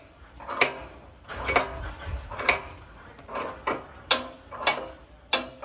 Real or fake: real